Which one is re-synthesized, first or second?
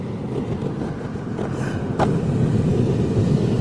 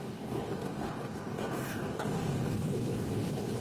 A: second